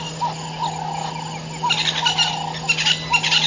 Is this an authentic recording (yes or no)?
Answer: yes